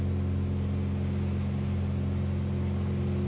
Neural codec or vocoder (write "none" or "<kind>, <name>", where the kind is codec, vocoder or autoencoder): none